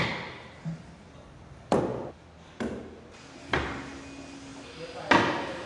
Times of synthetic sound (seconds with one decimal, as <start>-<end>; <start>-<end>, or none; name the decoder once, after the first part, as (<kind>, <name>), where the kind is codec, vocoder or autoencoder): none